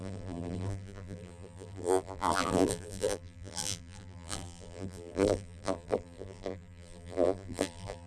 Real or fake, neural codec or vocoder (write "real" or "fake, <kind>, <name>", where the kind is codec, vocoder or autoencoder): fake, vocoder, BigVGAN v2